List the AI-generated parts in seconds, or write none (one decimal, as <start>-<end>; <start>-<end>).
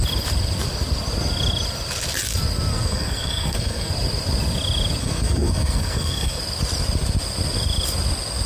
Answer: 2.7-3.9; 5.0-6.4